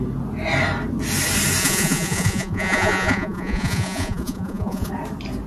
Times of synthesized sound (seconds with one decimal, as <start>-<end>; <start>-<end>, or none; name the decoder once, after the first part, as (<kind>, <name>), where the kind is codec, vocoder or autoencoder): 1.6-4.9 (vocoder, Vocos)